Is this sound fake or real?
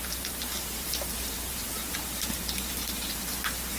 fake